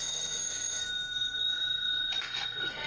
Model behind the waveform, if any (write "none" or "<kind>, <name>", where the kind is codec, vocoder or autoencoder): codec, SNAC